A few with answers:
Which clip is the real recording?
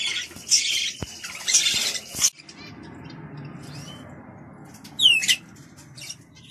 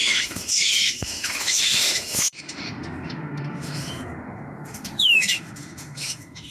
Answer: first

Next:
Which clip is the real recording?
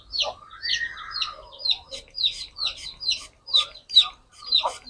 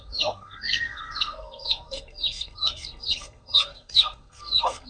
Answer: first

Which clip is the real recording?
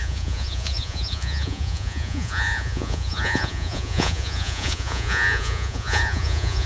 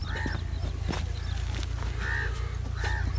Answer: second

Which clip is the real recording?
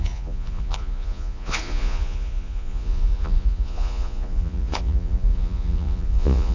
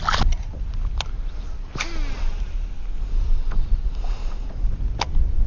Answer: second